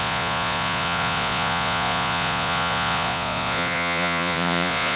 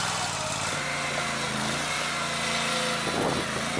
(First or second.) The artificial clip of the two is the first